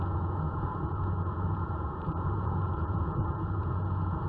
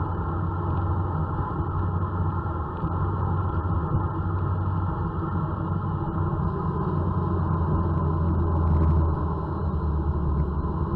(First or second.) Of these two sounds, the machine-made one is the first